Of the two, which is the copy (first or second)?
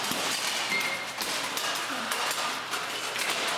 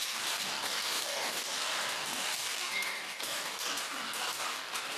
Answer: second